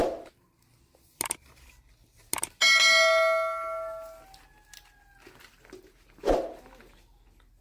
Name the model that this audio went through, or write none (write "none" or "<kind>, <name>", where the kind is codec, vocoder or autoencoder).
none